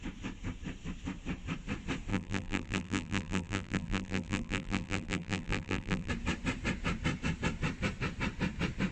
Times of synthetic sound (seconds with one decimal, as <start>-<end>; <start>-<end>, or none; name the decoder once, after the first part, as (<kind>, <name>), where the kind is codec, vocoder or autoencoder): 2.1-6.1 (vocoder, BigVGAN v2)